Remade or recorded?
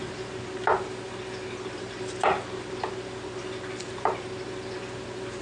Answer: recorded